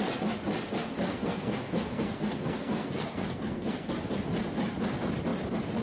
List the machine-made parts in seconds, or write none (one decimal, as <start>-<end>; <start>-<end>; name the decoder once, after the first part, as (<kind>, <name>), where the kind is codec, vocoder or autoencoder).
1.1-3.9 (codec, SNAC)